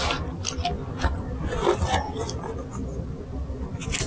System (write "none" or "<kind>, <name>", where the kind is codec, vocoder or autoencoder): none